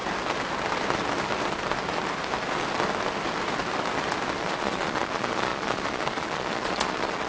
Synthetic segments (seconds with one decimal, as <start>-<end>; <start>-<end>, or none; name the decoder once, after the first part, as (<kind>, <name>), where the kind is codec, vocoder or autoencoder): 4.4-7.3 (vocoder, Vocos)

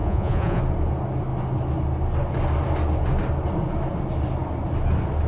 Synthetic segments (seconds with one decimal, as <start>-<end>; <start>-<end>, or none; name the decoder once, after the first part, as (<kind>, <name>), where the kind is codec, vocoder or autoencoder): 0.0-0.6 (vocoder, Vocos)

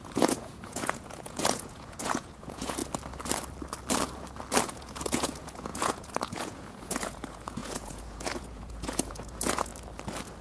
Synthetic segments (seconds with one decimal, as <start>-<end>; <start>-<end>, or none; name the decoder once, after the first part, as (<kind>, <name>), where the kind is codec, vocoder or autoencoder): 0.0-2.8 (vocoder, Vocos); 4.6-9.7

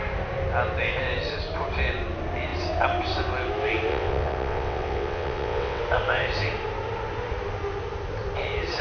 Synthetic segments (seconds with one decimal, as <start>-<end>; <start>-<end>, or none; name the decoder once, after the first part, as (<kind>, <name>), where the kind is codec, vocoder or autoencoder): 3.9-5.8 (vocoder, WaveNeXt)

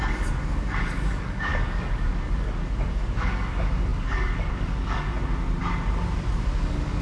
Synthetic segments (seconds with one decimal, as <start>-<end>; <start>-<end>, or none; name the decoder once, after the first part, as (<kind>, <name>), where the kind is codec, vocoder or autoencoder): 0.0-5.1 (codec, DAC); 6.3-7.0